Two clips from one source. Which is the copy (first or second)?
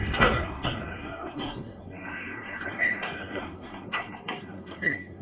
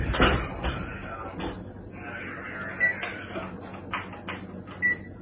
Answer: first